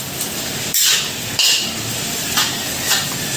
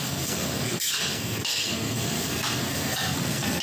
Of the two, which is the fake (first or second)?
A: second